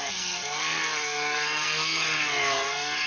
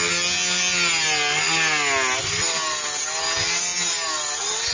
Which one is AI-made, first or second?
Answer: first